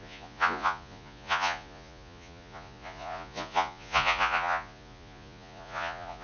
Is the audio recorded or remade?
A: remade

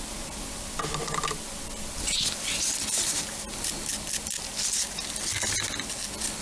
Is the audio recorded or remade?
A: recorded